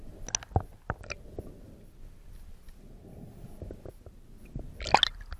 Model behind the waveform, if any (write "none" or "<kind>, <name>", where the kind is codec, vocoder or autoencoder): none